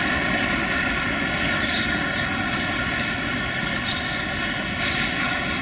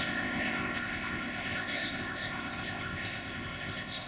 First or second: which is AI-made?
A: second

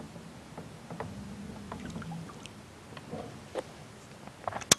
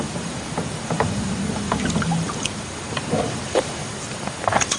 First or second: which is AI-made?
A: second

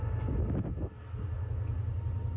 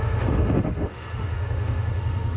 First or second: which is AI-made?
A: second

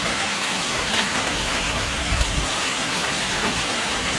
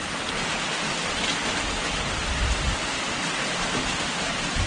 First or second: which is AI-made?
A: first